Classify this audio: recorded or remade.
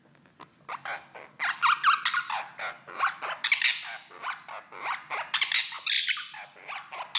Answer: recorded